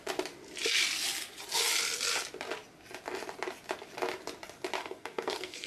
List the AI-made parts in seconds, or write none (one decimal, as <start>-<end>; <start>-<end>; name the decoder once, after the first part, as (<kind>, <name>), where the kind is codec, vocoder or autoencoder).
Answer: 4.8-5.7 (codec, SNAC)